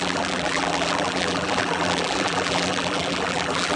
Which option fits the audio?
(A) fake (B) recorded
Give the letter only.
A